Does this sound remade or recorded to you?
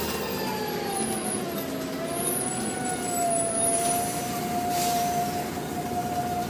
recorded